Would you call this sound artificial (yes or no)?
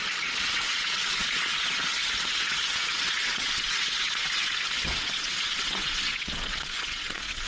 yes